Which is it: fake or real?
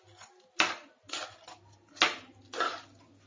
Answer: real